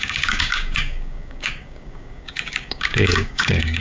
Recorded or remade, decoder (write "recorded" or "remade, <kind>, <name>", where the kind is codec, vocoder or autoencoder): remade, codec, DAC